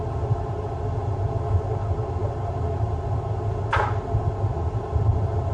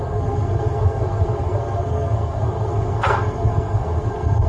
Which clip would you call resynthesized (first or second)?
second